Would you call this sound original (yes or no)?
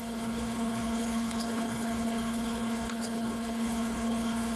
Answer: no